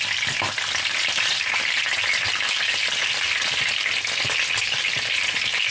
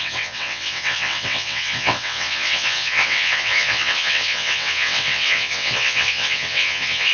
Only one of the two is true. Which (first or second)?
first